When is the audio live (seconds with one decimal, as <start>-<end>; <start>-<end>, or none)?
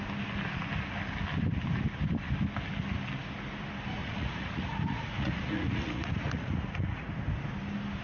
0.0-4.0; 7.1-8.0